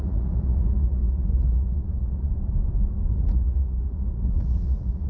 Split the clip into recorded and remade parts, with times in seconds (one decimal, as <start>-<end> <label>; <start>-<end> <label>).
0.0-2.3 remade; 2.3-3.0 recorded; 3.0-5.1 remade